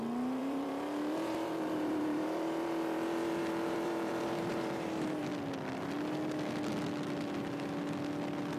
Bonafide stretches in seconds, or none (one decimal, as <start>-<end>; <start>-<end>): 0.0-0.4; 5.3-8.6